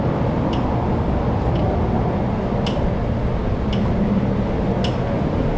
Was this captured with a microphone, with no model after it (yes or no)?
yes